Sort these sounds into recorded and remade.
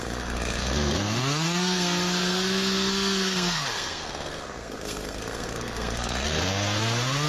remade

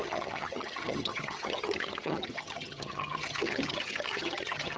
remade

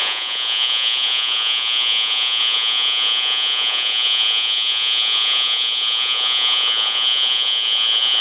remade